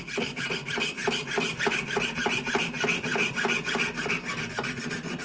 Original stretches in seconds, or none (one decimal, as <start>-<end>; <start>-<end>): 0.0-5.2